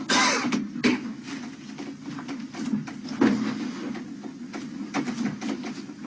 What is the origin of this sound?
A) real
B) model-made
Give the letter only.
A